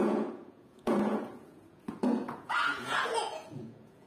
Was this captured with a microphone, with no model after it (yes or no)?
no